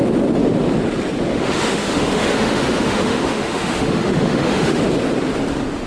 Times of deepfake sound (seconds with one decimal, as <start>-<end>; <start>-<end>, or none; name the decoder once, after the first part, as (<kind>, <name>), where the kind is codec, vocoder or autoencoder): 1.3-4.8 (autoencoder, DAC-VAE)